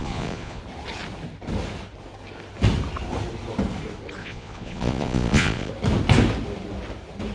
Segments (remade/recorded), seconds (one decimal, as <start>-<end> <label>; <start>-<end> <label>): 0.0-0.6 remade; 0.6-4.2 recorded; 4.2-5.7 remade; 5.7-7.3 recorded